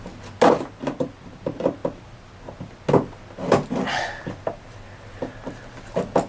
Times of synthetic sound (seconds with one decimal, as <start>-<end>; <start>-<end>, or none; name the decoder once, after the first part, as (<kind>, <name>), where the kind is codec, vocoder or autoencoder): none